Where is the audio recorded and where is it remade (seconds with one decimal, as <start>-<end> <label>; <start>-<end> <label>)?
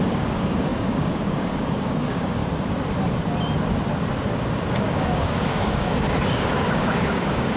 0.0-2.4 remade; 2.4-4.8 recorded; 4.8-7.6 remade